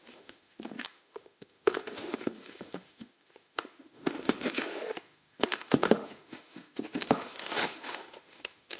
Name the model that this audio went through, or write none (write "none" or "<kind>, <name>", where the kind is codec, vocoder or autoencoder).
autoencoder, DAC-VAE